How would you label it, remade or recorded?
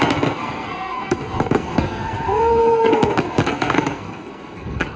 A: remade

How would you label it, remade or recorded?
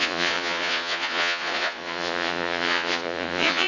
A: remade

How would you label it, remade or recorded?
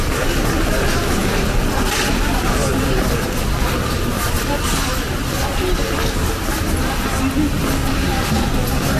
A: recorded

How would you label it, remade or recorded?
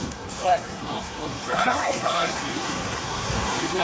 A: remade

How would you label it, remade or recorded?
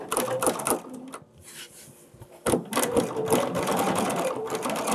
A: recorded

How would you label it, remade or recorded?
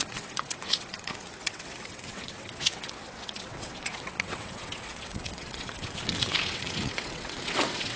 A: remade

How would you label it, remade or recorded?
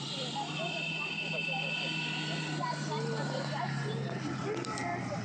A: recorded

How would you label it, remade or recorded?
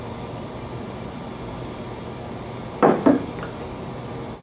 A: remade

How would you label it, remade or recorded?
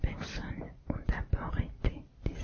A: recorded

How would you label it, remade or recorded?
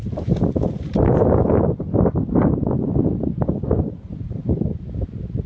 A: recorded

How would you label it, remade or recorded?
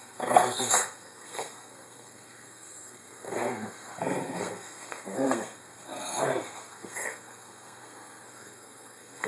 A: remade